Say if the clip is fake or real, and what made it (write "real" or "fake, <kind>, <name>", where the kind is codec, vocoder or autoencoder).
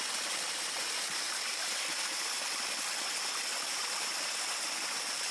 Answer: real